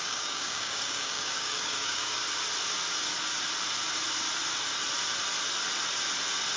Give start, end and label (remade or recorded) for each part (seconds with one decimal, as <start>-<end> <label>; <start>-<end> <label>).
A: 0.0-2.2 remade; 2.2-6.6 recorded